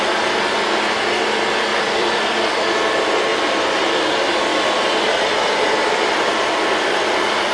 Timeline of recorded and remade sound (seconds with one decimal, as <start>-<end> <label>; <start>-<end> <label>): 0.0-1.7 recorded; 1.7-2.7 remade; 2.7-4.5 recorded; 4.5-7.0 remade; 7.0-7.5 recorded